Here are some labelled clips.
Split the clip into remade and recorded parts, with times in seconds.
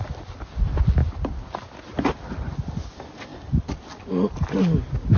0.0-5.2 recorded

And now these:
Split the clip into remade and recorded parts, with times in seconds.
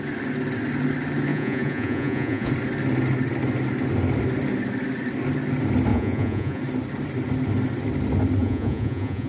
0.0-1.3 recorded; 1.3-2.5 remade; 2.5-5.9 recorded; 5.9-6.6 remade; 6.6-8.4 recorded; 8.4-9.3 remade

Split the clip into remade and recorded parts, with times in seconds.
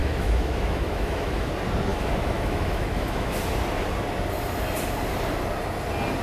0.0-1.5 remade; 1.5-1.9 recorded; 1.9-3.4 remade; 3.4-6.2 recorded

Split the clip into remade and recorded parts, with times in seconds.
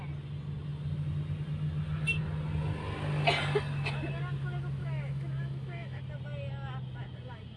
0.0-4.8 recorded; 4.8-6.0 remade; 6.0-7.6 recorded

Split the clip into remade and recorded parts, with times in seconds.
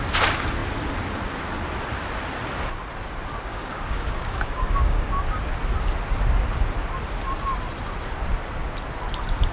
0.0-3.5 recorded; 3.5-5.1 remade; 5.1-9.5 recorded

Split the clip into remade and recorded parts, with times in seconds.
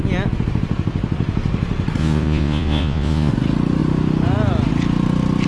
0.0-2.0 recorded; 2.0-3.3 remade; 3.3-5.5 recorded